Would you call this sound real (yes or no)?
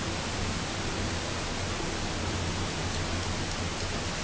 yes